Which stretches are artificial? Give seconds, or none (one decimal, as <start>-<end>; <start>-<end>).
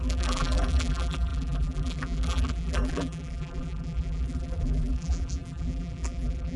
0.0-6.6